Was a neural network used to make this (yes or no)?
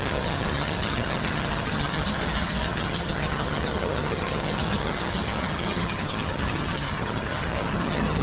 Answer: yes